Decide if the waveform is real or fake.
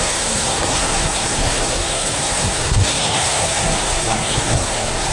fake